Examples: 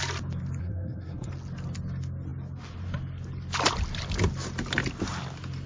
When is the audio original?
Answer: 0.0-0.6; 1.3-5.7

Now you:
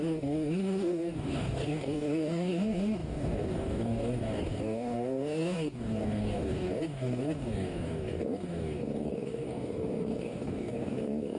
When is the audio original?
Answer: none

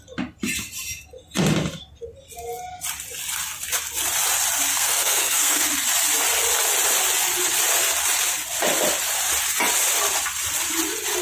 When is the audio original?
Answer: 0.0-4.7; 5.7-11.2